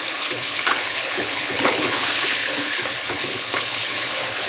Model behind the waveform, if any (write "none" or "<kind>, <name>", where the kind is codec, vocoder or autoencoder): codec, HILCodec